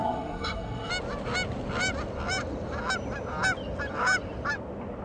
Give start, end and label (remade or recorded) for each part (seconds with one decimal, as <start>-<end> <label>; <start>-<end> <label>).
0.0-0.9 remade; 0.9-5.0 recorded